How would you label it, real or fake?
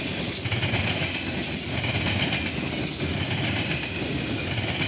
real